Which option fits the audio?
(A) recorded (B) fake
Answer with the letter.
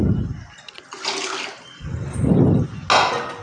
A